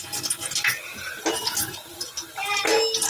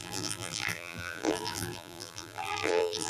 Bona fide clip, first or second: first